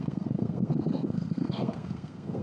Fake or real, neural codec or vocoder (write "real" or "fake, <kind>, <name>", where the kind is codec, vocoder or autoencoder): fake, codec, SNAC